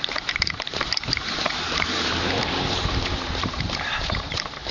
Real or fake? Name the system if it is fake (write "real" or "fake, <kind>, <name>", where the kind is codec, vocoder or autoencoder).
fake, vocoder, BigVGAN v2